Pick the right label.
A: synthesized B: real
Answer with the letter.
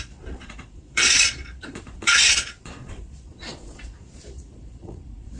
A